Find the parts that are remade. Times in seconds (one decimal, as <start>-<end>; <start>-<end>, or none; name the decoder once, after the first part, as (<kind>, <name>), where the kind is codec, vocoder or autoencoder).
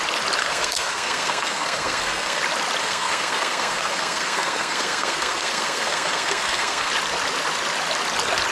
0.4-2.4 (codec, SNAC); 2.8-6.9